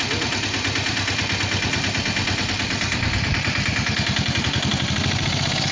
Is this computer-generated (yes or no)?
no